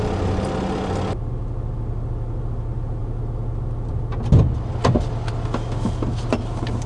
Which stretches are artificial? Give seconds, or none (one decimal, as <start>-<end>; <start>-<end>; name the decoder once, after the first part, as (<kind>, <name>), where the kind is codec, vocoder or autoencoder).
none